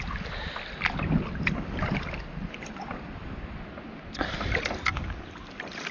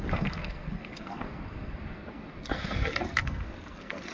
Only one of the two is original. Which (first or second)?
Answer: first